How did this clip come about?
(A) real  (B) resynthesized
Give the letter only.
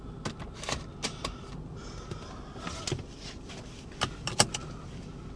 A